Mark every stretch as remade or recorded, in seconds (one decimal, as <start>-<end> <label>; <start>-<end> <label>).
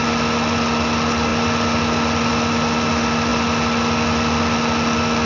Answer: 0.0-5.3 recorded